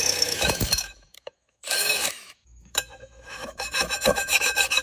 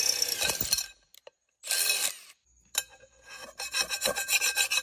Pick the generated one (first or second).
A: first